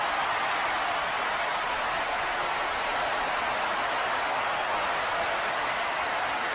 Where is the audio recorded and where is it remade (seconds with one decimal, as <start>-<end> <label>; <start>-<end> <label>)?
0.0-6.5 recorded